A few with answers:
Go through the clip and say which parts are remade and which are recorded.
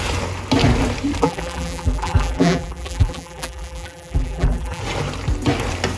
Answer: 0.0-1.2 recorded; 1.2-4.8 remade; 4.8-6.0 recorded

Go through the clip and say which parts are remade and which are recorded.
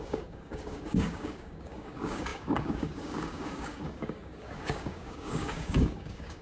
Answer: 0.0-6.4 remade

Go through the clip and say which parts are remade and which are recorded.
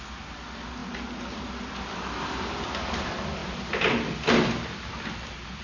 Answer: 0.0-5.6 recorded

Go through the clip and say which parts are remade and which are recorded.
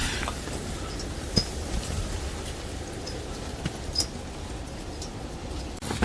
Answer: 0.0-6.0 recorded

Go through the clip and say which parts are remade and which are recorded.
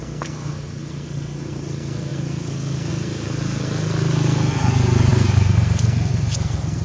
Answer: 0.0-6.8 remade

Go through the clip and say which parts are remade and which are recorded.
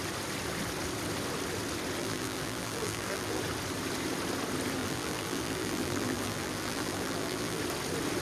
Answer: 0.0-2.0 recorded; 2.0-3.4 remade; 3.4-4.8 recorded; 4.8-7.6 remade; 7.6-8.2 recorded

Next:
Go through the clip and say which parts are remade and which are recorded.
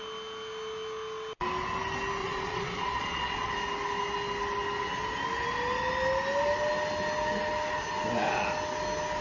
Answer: 0.0-2.2 recorded; 2.2-3.5 remade; 3.5-9.2 recorded